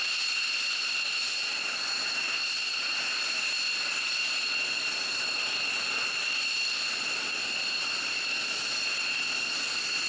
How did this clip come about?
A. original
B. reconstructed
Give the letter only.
A